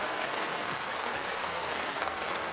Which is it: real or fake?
fake